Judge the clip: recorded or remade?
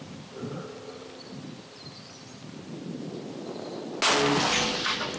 recorded